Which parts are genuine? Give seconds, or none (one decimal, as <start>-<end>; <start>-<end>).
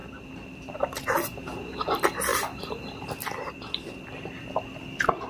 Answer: 0.0-2.3; 3.5-5.3